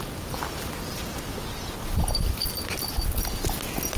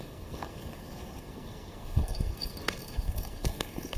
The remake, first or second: second